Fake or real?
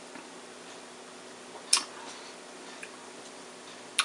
real